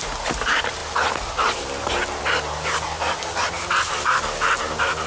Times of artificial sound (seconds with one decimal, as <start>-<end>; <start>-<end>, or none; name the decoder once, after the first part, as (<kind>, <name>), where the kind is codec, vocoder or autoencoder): none